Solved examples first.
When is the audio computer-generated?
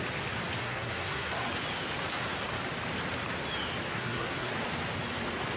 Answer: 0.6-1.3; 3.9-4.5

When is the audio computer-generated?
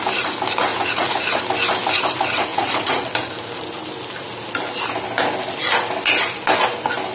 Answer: 0.7-1.4; 2.5-3.0